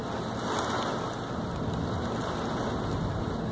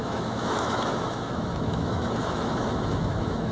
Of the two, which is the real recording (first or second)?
first